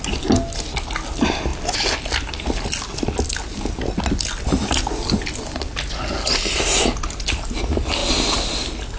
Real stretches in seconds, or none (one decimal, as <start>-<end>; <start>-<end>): 0.0-9.0